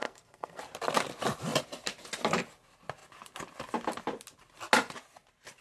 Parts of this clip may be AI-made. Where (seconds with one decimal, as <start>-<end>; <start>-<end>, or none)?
0.0-0.6